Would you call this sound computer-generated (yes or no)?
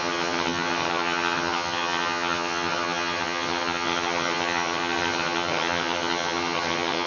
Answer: yes